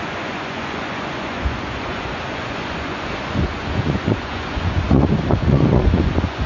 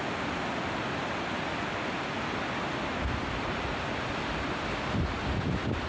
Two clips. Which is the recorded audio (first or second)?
second